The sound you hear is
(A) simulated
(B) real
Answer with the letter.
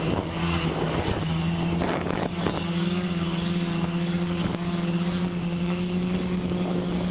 A